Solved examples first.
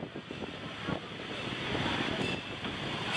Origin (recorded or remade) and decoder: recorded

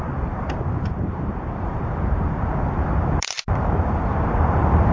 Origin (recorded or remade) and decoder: remade, vocoder, BigVGAN v2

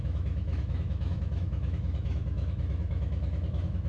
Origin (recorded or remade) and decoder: remade, autoencoder, DAC-VAE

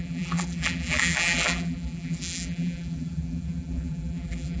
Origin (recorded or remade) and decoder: remade, vocoder, BigVGAN v2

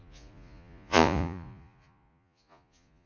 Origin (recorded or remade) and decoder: remade, vocoder, Vocos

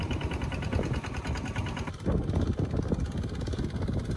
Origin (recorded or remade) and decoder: recorded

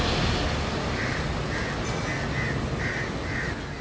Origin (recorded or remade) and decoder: recorded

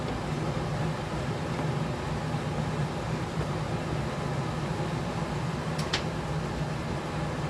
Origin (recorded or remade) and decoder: recorded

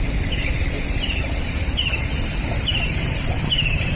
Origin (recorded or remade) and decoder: remade, vocoder, BigVGAN v2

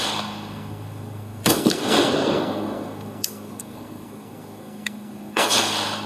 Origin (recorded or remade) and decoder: remade, codec, SNAC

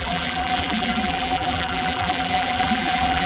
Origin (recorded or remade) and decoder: remade, vocoder, BigVGAN v2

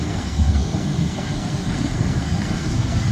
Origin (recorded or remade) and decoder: remade, codec, SNAC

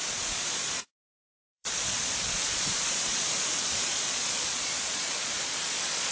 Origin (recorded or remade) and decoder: remade, vocoder, Vocos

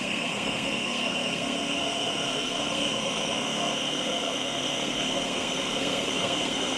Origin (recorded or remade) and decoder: remade, codec, SNAC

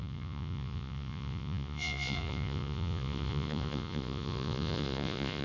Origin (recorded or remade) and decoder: remade, vocoder, Vocos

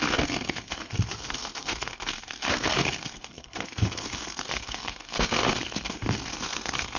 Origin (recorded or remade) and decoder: remade, codec, SNAC